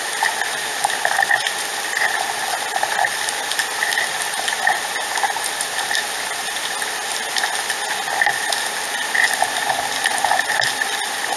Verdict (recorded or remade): recorded